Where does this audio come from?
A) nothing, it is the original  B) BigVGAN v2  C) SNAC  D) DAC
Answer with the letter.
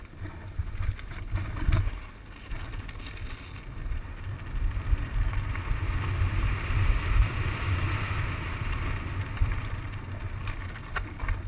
A